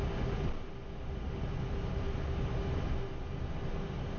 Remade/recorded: recorded